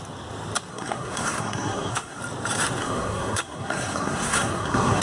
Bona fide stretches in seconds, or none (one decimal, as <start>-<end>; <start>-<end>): 0.0-0.7; 2.2-2.8